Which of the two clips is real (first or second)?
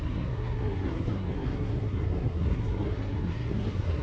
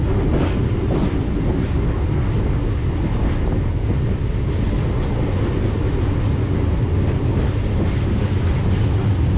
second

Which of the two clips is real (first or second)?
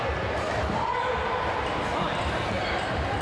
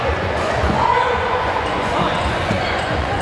first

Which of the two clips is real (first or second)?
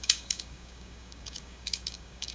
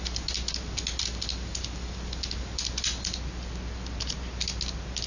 second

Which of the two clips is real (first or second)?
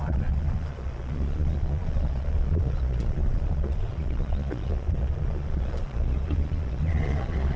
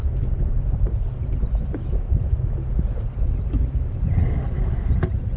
second